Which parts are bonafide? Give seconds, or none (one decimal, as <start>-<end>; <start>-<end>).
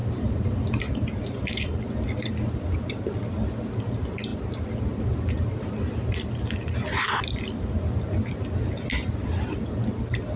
1.9-10.4